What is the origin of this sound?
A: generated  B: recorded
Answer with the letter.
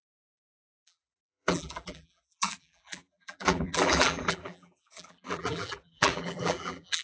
A